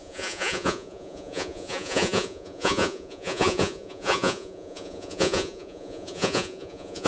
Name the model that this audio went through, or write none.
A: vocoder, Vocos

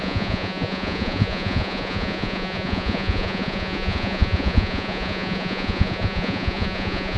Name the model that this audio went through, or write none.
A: vocoder, Vocos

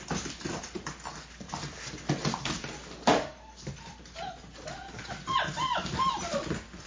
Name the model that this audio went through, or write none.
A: none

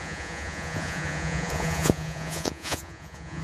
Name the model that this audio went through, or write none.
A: vocoder, Vocos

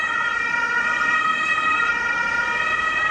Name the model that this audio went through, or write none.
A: vocoder, BigVGAN v2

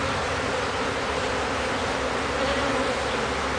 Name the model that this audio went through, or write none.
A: none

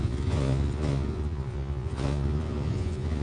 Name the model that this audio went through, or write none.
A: vocoder, Vocos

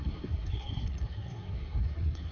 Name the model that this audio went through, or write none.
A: codec, SNAC